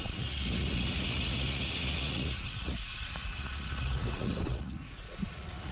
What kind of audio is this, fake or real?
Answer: fake